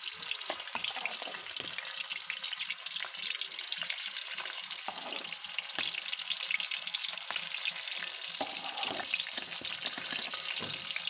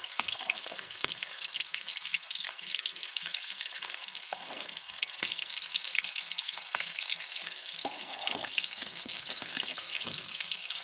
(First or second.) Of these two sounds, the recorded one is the first